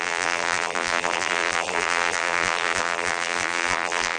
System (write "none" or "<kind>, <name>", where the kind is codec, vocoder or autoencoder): vocoder, BigVGAN v2